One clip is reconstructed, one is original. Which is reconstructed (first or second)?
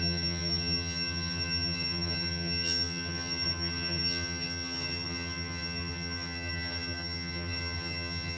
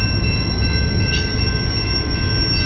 first